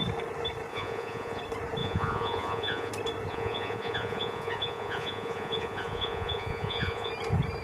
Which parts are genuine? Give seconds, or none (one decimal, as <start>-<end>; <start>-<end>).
0.0-0.7; 1.4-1.8; 2.9-3.3; 7.1-7.6